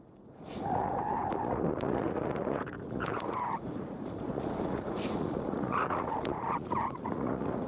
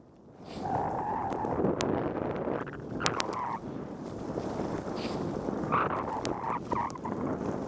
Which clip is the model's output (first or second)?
first